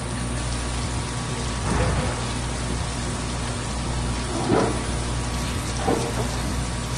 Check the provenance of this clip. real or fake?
real